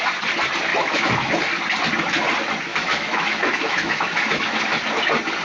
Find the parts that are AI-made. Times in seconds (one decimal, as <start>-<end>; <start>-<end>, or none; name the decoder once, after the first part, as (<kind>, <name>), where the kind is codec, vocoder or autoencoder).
0.7-1.4 (autoencoder, DAC-VAE); 2.7-4.6

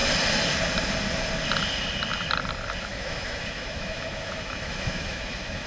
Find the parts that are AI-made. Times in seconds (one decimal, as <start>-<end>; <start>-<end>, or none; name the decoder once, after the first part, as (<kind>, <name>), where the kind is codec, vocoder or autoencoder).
2.8-5.7 (autoencoder, DAC-VAE)

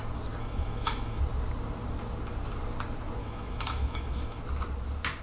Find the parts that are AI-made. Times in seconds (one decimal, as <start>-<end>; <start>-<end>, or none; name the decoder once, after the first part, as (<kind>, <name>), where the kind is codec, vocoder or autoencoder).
0.4-1.2 (autoencoder, DAC-VAE); 3.2-4.4

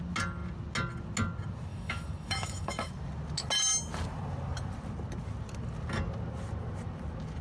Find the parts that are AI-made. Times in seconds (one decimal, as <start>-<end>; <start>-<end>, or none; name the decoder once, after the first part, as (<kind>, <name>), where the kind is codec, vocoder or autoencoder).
1.7-2.9 (autoencoder, DAC-VAE)

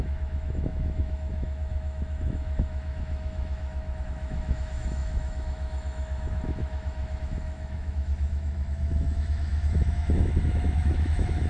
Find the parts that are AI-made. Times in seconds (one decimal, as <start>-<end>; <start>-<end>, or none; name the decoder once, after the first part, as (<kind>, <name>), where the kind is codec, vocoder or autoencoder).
0.0-11.5 (autoencoder, DAC-VAE)

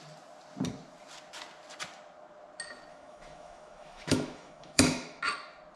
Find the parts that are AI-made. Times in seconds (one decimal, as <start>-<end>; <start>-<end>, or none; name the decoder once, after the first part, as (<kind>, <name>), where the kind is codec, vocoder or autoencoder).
2.9-5.2 (autoencoder, DAC-VAE)

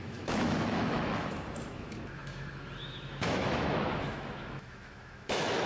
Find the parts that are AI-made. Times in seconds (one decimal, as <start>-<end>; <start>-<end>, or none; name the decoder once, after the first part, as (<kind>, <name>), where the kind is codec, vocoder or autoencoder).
0.0-5.7 (autoencoder, DAC-VAE)

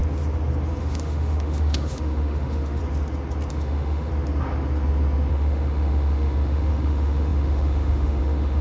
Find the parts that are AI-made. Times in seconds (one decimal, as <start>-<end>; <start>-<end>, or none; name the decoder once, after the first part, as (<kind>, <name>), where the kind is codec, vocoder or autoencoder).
0.8-2.8 (autoencoder, DAC-VAE); 3.5-4.1; 5.3-8.6